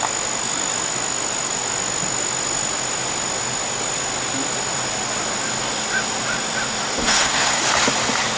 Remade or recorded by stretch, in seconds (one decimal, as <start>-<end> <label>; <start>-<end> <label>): 0.0-6.9 recorded; 6.9-7.6 remade; 7.6-8.4 recorded